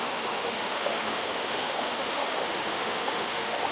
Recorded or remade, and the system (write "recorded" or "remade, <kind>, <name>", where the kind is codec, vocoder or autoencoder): remade, autoencoder, DAC-VAE